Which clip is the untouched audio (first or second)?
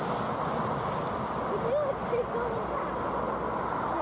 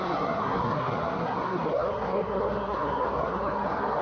first